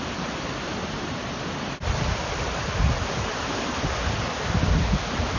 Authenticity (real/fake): real